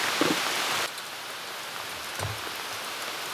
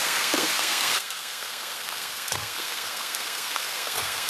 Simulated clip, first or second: second